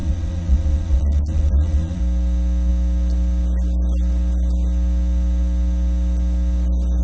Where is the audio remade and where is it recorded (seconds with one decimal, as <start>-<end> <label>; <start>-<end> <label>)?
0.0-2.0 remade; 2.0-7.0 recorded